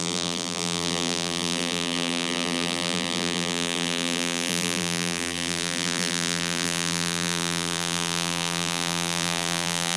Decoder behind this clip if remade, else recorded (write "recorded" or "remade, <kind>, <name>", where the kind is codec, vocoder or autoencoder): remade, vocoder, BigVGAN v2